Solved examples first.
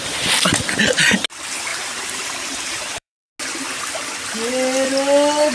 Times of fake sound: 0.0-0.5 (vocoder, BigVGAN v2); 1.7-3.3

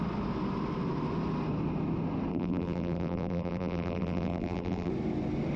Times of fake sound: 2.3-4.9 (vocoder, BigVGAN v2)